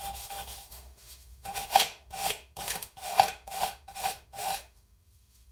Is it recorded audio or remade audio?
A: remade